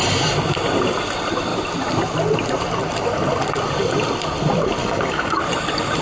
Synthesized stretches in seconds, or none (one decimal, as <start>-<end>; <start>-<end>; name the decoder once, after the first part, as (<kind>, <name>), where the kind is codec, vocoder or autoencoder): 4.8-5.4 (codec, DAC)